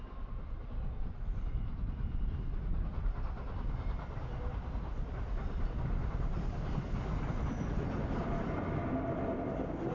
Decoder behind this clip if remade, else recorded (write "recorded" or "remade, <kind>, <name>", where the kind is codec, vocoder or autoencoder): recorded